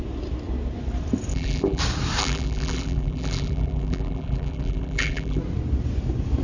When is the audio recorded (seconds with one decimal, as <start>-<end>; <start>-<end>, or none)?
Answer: 0.0-1.3; 1.8-2.2; 5.4-6.4